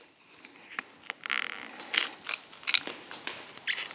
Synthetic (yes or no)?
no